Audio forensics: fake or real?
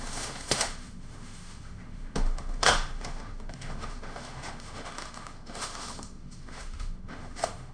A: fake